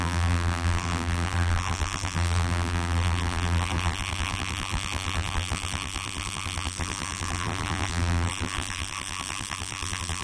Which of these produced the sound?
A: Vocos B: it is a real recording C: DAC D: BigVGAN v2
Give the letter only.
D